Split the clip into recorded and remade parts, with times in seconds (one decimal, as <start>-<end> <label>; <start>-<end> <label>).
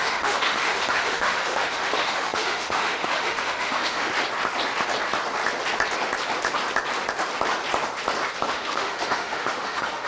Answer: 0.0-4.1 remade; 4.1-8.5 recorded; 8.5-10.1 remade